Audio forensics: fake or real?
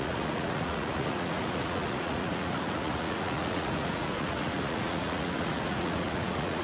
fake